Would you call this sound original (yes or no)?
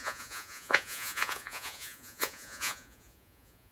no